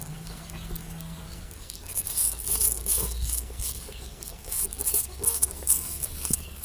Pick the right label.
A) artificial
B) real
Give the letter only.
A